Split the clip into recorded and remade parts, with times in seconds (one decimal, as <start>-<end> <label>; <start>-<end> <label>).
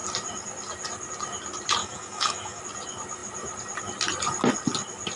0.0-1.8 recorded; 1.8-2.6 remade; 2.6-5.2 recorded